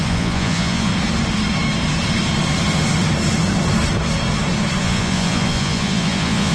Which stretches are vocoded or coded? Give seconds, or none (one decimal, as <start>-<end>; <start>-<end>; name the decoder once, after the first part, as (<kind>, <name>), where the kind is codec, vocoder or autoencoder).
0.0-0.9 (vocoder, Vocos); 4.8-6.5